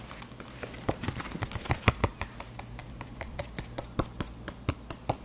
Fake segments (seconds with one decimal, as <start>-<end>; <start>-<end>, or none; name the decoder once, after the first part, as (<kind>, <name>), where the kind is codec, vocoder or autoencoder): 2.8-3.4 (vocoder, BigVGAN v2)